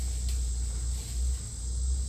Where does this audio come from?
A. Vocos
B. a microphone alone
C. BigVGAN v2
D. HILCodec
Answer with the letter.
B